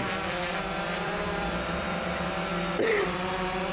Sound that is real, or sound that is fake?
fake